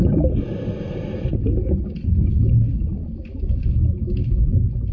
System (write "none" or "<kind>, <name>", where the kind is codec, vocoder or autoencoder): none